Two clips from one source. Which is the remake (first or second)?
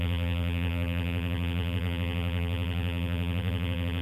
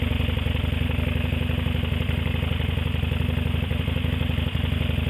first